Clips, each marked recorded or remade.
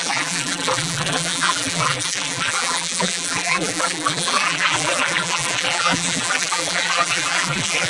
remade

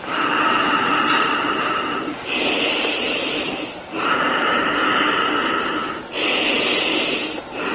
remade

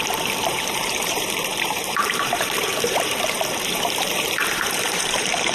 remade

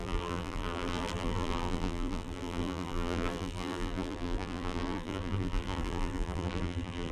remade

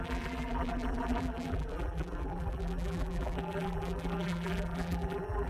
remade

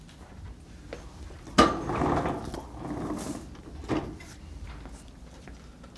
recorded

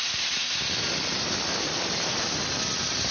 remade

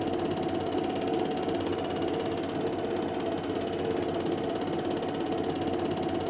recorded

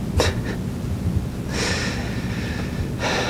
remade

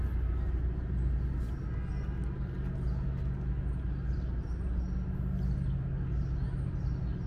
recorded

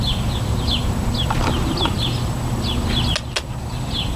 recorded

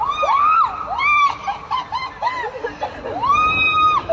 recorded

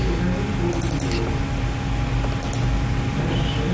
recorded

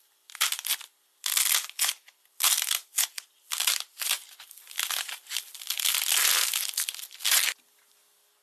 recorded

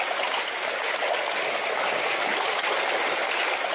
recorded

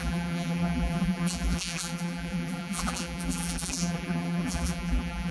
remade